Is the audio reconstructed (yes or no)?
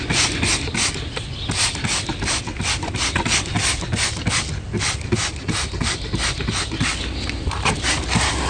no